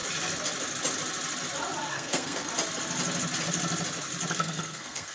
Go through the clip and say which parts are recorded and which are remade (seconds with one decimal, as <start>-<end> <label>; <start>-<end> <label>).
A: 0.0-1.9 recorded; 1.9-2.5 remade; 2.5-4.3 recorded; 4.3-5.1 remade